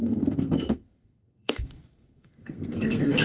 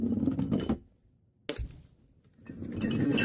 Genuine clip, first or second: second